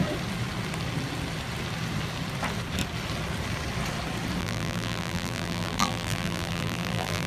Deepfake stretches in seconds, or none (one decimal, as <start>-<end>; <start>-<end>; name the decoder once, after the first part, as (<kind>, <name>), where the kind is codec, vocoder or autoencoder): 4.4-7.3 (vocoder, BigVGAN v2)